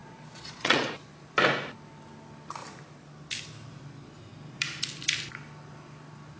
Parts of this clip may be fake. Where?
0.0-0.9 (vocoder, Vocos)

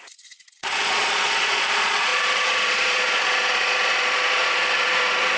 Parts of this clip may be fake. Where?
0.0-5.4 (vocoder, Vocos)